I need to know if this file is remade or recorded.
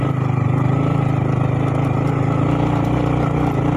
recorded